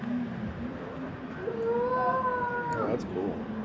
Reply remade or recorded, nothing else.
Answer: recorded